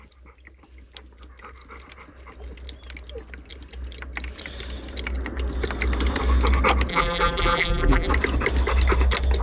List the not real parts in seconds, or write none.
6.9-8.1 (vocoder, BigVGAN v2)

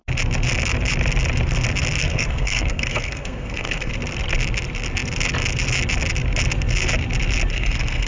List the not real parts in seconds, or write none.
2.0-3.9 (codec, SNAC); 7.5-8.1